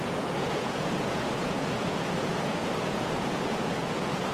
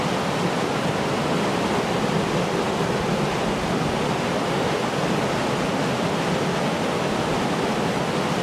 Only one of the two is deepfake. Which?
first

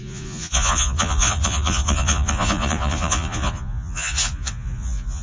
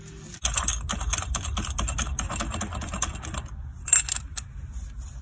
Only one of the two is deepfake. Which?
first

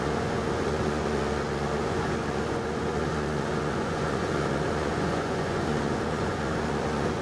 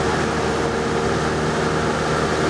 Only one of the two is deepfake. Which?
first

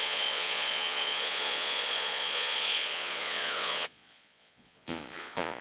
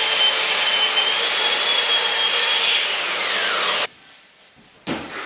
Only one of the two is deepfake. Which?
first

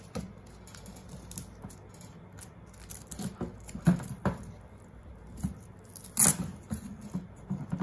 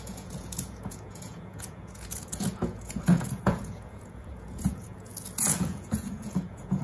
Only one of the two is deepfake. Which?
second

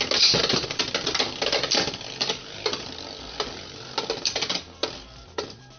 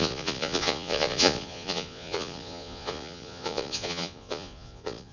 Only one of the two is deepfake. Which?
second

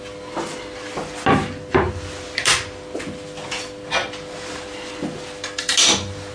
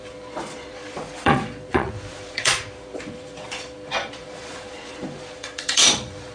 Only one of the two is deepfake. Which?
second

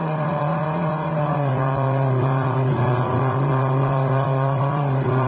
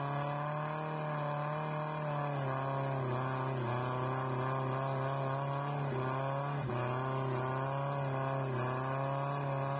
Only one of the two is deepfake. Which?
first